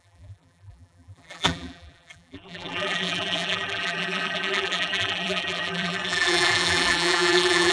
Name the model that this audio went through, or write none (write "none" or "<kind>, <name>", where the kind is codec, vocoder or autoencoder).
vocoder, BigVGAN v2